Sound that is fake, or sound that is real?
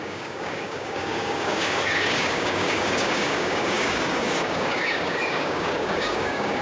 fake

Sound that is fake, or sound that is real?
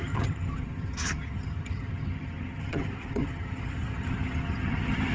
fake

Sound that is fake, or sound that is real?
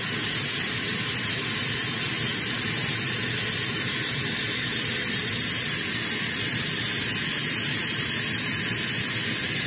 real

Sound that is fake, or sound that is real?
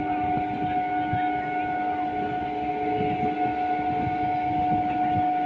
real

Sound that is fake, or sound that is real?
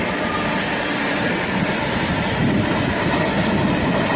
real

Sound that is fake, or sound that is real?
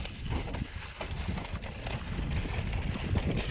real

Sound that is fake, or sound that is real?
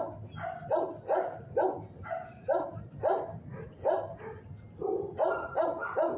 real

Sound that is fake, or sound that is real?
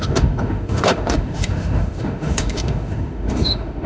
fake